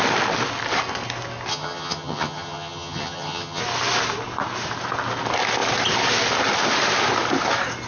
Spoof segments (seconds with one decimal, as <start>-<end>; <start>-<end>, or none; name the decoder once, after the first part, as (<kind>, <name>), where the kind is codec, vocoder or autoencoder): 1.5-3.6 (vocoder, HiFi-GAN)